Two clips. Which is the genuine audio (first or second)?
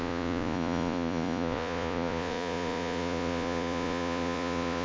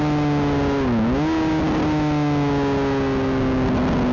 second